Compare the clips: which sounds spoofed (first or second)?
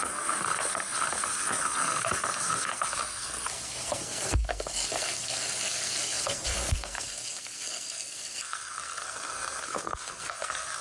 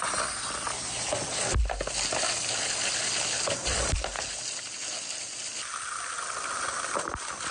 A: first